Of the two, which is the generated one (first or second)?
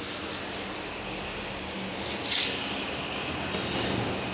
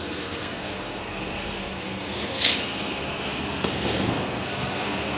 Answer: second